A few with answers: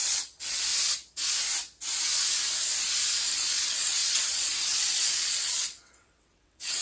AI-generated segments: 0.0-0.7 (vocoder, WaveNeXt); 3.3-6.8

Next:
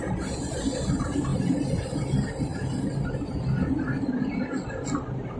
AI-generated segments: none